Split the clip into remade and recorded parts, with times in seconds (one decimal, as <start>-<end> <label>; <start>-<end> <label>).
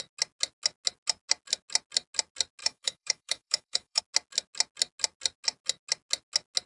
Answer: 0.0-2.6 recorded; 2.6-4.0 remade; 4.0-6.7 recorded